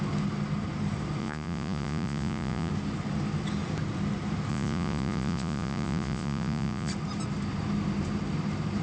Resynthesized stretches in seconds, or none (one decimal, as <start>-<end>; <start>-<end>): 1.2-2.7; 4.5-6.9